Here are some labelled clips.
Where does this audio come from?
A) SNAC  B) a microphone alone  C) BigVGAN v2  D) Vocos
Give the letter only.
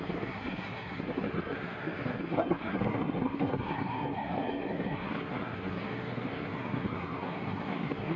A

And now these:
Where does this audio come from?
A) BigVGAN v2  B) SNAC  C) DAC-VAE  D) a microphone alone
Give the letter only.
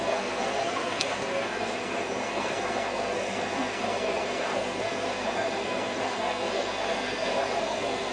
B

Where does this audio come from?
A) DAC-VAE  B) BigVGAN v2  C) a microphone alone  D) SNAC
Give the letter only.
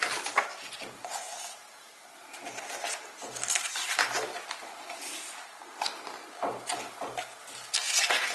C